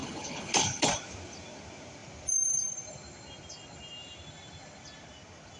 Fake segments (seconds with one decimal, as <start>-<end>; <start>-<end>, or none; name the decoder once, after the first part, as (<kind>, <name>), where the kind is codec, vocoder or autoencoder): 0.0-0.9 (codec, HILCodec)